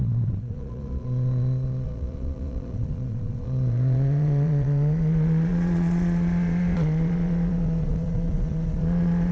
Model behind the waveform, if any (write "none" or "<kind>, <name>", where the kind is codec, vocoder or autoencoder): vocoder, Vocos